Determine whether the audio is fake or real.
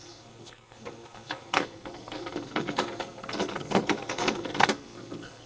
fake